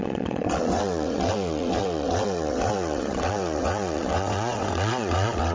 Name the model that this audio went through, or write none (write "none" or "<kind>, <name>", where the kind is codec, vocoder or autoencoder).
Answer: vocoder, WaveNeXt